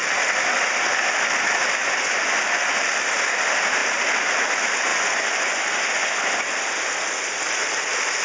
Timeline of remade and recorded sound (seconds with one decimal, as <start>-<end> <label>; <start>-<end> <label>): 0.0-1.8 recorded; 1.8-2.4 remade; 2.4-4.9 recorded; 4.9-6.4 remade; 6.4-8.2 recorded